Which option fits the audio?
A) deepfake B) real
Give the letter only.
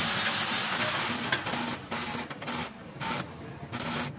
B